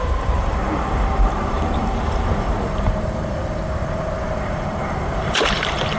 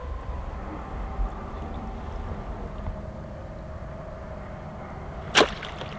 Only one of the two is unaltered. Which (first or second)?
second